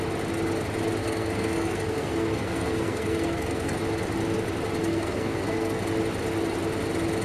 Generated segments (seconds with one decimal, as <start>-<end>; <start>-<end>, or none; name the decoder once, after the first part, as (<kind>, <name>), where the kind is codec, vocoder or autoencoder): 1.0-3.8 (codec, SNAC); 4.8-5.8